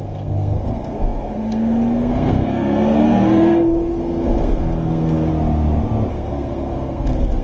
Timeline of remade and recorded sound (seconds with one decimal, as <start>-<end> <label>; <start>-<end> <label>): 0.0-5.3 remade; 5.3-6.1 recorded; 6.1-7.4 remade